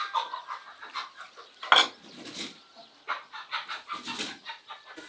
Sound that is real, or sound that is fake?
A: real